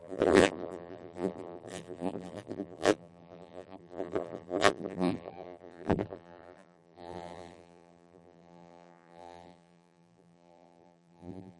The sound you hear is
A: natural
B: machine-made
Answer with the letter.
B